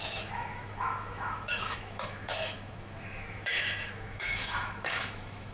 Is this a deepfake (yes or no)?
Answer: yes